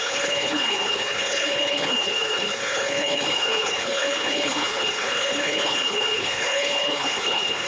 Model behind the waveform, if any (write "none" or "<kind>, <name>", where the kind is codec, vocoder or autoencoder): codec, HILCodec